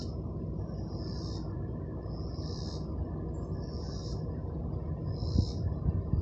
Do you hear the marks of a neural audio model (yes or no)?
no